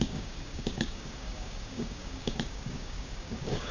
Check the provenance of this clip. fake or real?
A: fake